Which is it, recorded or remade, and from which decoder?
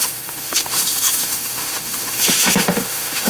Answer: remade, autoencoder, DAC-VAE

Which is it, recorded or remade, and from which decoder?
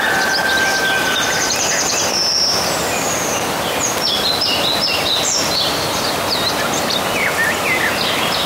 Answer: recorded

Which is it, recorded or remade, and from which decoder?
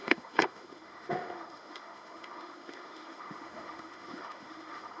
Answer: remade, autoencoder, DAC-VAE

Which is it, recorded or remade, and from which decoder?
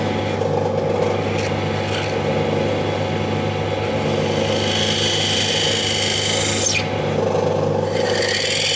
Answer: recorded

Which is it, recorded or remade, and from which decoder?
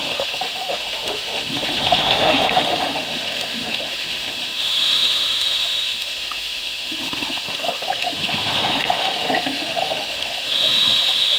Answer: remade, autoencoder, DAC-VAE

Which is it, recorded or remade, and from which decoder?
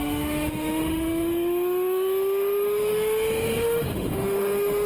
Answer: remade, autoencoder, DAC-VAE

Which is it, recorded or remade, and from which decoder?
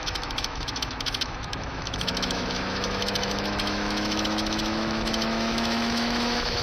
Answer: remade, autoencoder, DAC-VAE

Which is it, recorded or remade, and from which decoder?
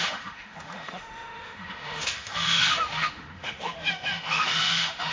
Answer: remade, autoencoder, DAC-VAE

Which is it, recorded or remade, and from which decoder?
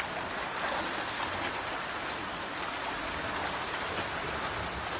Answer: recorded